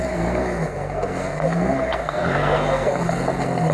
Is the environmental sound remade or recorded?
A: remade